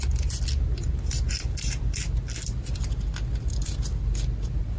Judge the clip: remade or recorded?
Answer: remade